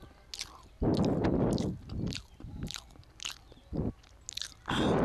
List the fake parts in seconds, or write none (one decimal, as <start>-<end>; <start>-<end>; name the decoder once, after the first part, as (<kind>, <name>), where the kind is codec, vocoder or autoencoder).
none